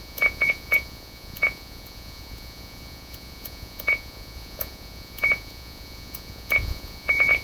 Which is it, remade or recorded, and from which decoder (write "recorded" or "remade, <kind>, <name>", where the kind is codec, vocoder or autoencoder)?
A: remade, vocoder, Vocos